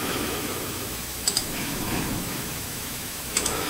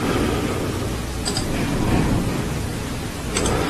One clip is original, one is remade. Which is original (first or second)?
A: second